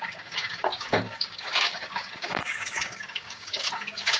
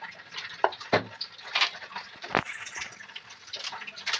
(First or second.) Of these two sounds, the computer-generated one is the first